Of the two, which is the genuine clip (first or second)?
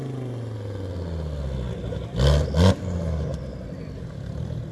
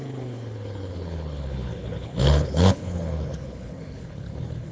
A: first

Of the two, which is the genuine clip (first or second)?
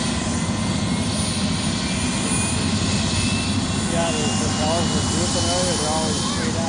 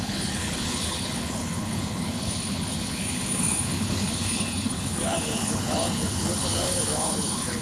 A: first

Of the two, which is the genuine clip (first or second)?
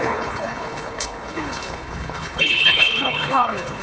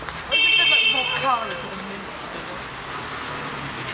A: second